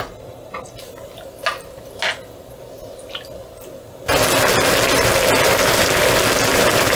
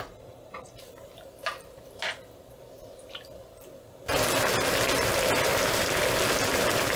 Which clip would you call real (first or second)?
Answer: first